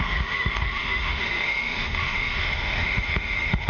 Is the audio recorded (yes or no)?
no